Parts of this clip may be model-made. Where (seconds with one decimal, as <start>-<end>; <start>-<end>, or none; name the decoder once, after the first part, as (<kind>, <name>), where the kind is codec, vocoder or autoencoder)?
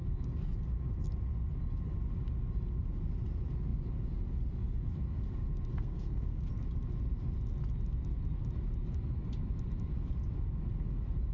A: 5.7-6.4 (codec, SNAC)